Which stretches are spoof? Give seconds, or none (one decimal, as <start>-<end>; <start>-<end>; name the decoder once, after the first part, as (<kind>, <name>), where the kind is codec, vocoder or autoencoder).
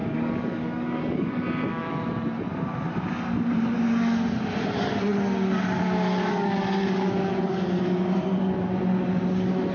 0.0-1.4 (codec, DAC); 6.3-7.7